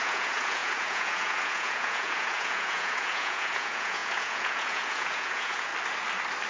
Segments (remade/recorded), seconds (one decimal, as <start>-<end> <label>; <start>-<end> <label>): 0.0-5.7 remade; 5.7-6.5 recorded